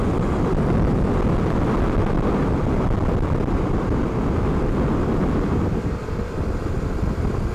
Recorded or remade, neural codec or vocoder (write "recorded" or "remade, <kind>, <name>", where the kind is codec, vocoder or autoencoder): remade, vocoder, BigVGAN v2